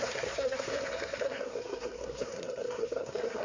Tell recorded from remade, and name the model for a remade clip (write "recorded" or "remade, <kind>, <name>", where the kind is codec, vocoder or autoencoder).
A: remade, codec, SNAC